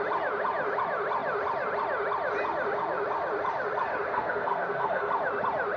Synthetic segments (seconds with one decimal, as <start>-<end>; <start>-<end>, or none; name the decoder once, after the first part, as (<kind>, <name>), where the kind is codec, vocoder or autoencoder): 4.1-5.1 (codec, SNAC)